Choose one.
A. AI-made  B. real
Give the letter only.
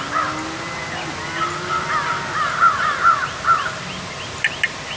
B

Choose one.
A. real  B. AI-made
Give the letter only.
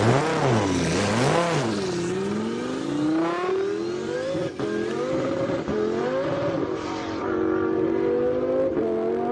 A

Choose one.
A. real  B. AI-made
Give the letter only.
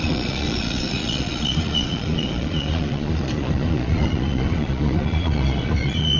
B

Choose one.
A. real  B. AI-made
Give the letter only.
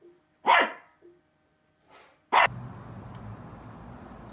A